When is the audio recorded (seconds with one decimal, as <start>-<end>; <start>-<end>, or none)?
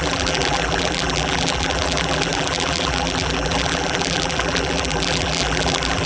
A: none